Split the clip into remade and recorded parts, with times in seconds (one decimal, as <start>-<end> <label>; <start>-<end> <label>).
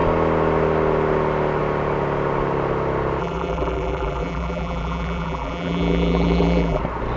0.0-3.2 recorded; 3.2-6.8 remade; 6.8-7.2 recorded